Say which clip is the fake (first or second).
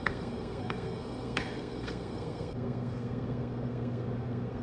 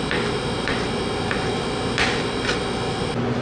first